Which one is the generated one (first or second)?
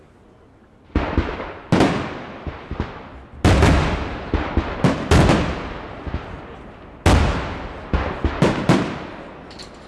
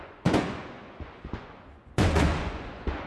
second